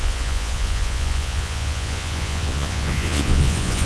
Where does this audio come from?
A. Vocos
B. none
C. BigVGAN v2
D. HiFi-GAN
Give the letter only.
A